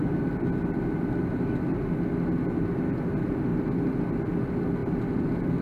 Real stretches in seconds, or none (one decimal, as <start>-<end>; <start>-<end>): 0.0-5.6